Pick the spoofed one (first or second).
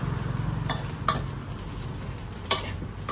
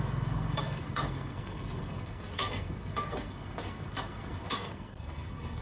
second